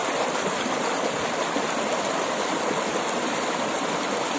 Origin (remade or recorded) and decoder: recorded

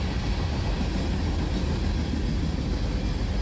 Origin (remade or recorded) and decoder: recorded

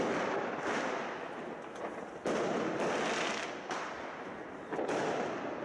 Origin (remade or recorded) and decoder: recorded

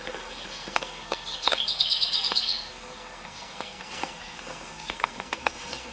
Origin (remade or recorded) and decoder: remade, codec, SNAC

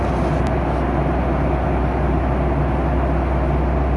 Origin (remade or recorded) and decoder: recorded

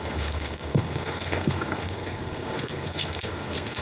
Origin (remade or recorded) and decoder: remade, codec, SNAC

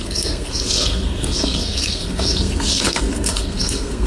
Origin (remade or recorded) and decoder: remade, codec, SNAC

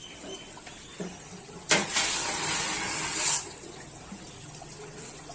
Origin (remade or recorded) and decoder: recorded